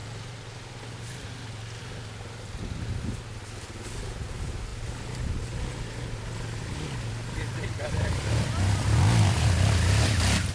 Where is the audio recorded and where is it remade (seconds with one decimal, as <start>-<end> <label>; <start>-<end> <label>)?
0.0-10.5 recorded